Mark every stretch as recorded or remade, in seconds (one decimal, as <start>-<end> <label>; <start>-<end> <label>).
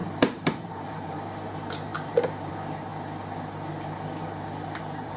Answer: 0.0-2.9 remade; 2.9-4.8 recorded; 4.8-5.2 remade